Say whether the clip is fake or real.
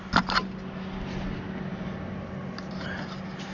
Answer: real